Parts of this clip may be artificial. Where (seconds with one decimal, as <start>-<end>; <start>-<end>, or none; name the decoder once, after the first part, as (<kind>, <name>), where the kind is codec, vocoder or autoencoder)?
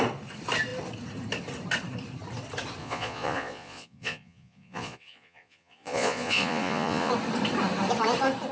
2.8-7.1 (vocoder, Vocos)